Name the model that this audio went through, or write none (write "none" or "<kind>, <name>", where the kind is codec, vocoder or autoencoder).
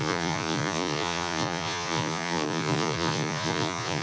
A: vocoder, Vocos